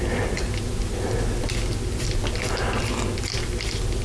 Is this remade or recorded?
recorded